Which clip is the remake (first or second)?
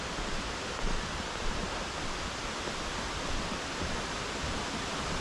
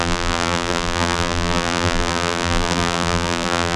second